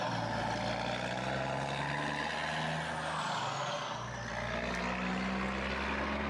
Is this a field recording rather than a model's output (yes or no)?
yes